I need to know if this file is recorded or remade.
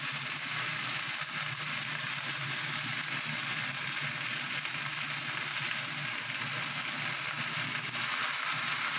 recorded